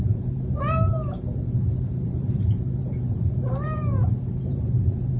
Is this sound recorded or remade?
remade